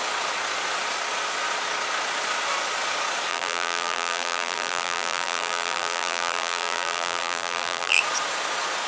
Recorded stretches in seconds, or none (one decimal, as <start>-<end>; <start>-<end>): 0.0-3.3; 8.0-8.9